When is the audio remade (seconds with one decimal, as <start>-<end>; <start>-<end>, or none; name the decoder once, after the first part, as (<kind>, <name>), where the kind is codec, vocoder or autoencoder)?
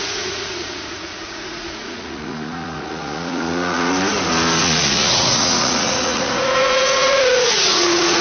0.0-3.9 (vocoder, Vocos); 4.6-8.2